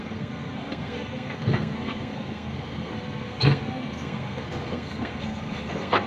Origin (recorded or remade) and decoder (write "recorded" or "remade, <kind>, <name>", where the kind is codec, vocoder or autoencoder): remade, codec, SNAC